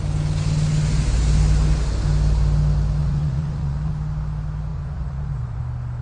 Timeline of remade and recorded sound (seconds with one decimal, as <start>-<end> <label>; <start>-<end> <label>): 0.0-3.0 recorded; 3.0-3.9 remade; 3.9-4.7 recorded; 4.7-5.6 remade; 5.6-6.0 recorded

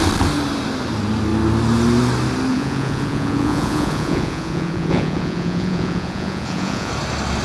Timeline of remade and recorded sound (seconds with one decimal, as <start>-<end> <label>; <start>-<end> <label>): 0.0-2.5 recorded; 2.5-6.9 remade; 6.9-7.4 recorded

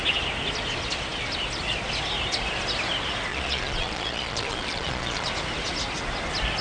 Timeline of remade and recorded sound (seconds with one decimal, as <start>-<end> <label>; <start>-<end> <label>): 0.0-3.3 recorded; 3.3-5.3 remade; 5.3-6.6 recorded

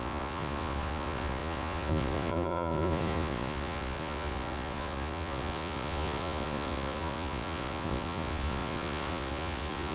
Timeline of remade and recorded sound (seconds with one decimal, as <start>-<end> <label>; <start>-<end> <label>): 0.0-9.9 remade

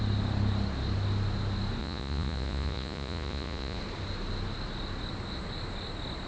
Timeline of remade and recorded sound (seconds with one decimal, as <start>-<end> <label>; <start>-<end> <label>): 0.0-1.8 recorded; 1.8-3.8 remade; 3.8-6.3 recorded

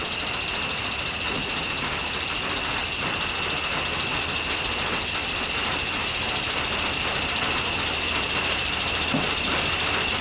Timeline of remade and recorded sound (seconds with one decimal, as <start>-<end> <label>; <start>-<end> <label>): 0.0-0.7 recorded; 0.7-1.6 remade; 1.6-10.2 recorded